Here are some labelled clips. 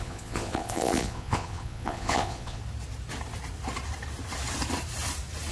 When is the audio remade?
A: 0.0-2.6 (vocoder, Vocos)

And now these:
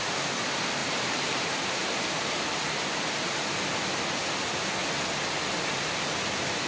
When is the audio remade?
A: 0.8-2.4 (vocoder, BigVGAN v2)

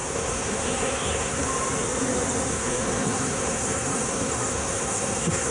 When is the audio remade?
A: 0.0-1.4 (codec, SNAC); 2.5-5.5